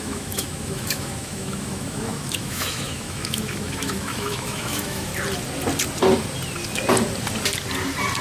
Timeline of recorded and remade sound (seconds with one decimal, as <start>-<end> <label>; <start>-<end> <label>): 0.0-5.1 remade; 5.1-8.2 recorded